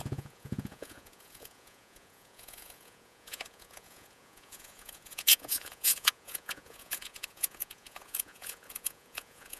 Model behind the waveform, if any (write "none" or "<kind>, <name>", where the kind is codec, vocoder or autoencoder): vocoder, Vocos